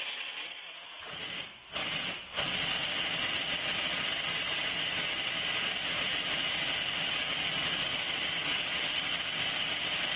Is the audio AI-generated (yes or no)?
no